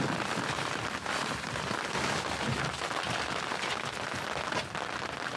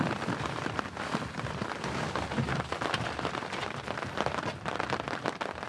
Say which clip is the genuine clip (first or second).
first